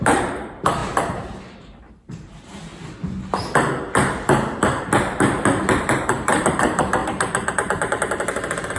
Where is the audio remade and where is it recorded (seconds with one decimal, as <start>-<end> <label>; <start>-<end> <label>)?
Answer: 0.0-2.7 remade; 2.7-5.8 recorded; 5.8-8.8 remade